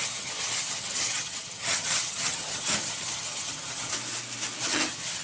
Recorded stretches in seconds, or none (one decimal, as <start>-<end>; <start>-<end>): 3.9-4.6